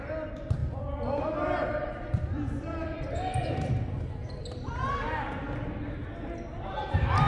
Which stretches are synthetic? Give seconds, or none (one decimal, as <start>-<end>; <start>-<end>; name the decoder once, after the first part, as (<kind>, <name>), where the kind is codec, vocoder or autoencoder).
0.6-3.7 (vocoder, BigVGAN v2)